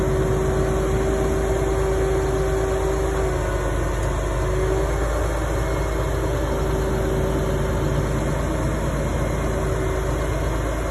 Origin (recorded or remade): recorded